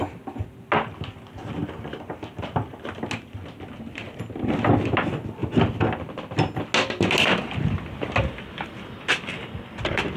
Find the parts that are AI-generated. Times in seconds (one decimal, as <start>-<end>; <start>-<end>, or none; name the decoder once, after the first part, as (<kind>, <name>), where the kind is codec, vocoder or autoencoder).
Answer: 1.6-2.9 (vocoder, BigVGAN v2)